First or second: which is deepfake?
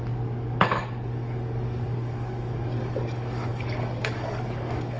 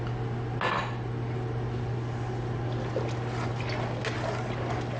first